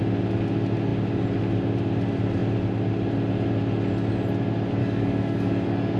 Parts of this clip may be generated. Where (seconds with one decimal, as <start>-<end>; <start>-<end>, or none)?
4.8-6.0